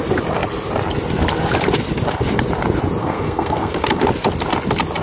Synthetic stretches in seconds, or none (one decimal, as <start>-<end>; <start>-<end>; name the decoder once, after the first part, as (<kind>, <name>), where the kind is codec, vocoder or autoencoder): 3.0-4.0 (codec, SNAC)